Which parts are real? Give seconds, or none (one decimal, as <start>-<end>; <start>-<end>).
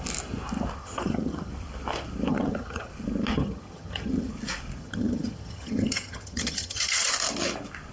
0.0-0.8; 1.5-2.3; 2.9-3.3; 4.3-4.8; 7.1-7.9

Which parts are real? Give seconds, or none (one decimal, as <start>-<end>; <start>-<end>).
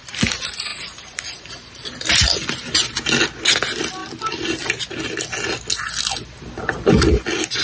0.0-7.6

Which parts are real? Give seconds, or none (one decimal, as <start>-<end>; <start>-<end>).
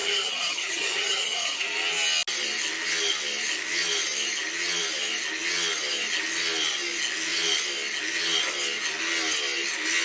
1.6-10.0